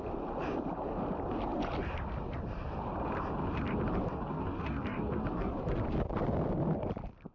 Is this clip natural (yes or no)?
yes